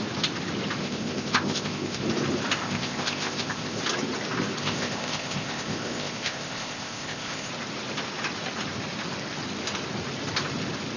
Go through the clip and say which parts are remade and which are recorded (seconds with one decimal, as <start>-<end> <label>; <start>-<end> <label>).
0.0-0.8 recorded; 0.8-2.0 remade; 2.0-2.6 recorded; 2.6-3.8 remade; 3.8-4.6 recorded; 4.6-7.5 remade; 7.5-11.0 recorded